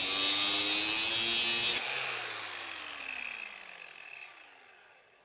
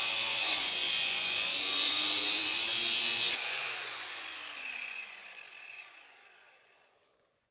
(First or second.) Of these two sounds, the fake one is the second